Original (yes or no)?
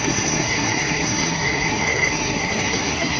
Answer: no